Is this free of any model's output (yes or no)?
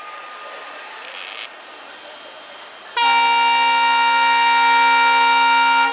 yes